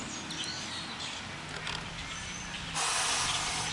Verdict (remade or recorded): recorded